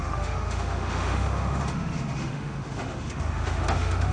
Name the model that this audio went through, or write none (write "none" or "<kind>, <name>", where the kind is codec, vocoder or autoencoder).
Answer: autoencoder, DAC-VAE